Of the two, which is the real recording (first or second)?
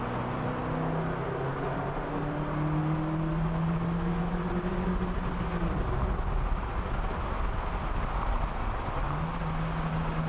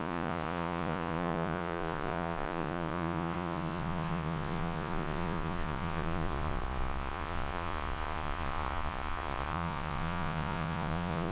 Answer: first